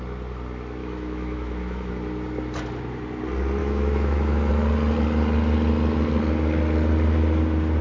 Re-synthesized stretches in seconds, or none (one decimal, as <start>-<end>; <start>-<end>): 0.8-1.9; 3.6-4.5